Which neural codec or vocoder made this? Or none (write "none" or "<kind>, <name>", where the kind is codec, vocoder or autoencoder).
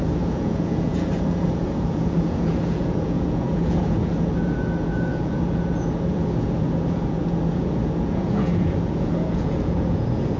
vocoder, Vocos